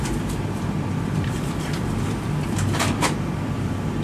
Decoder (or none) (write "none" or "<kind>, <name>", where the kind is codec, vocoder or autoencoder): vocoder, BigVGAN v2